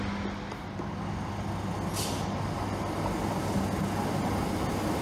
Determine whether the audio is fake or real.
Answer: real